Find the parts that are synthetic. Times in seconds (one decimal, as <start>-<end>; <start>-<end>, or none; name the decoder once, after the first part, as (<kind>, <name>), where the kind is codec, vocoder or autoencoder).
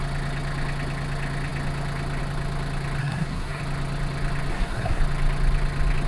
3.0-3.6 (codec, SNAC); 4.5-5.0